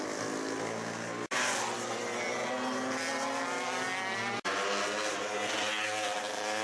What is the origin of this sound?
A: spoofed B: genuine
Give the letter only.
B